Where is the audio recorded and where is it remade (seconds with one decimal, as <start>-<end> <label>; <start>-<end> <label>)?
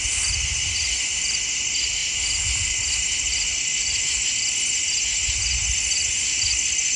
0.0-7.0 recorded